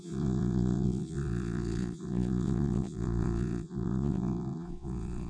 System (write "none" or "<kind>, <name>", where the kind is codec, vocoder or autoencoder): vocoder, Vocos